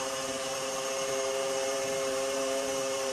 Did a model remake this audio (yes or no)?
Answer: yes